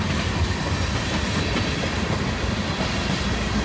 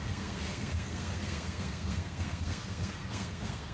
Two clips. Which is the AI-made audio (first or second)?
second